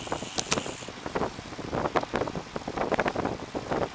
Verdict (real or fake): real